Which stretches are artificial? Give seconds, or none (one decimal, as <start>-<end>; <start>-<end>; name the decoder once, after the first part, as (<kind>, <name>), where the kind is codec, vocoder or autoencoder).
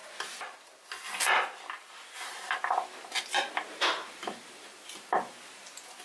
none